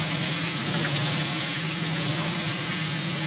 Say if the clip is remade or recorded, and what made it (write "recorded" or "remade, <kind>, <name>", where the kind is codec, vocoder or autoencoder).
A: recorded